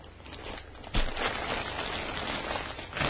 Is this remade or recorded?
recorded